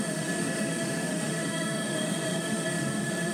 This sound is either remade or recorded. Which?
remade